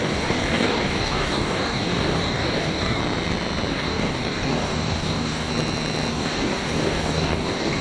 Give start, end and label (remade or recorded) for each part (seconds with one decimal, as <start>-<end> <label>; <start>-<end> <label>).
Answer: 0.0-3.0 remade; 3.0-3.7 recorded; 3.7-5.5 remade; 5.5-6.1 recorded; 6.1-7.8 remade